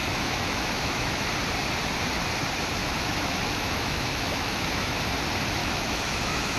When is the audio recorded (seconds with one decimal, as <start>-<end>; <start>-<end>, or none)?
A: 1.2-2.8; 5.0-5.6